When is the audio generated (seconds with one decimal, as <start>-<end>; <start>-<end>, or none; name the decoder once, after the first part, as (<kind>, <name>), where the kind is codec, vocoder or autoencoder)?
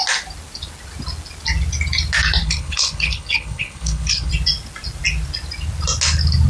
2.4-4.3 (codec, HILCodec)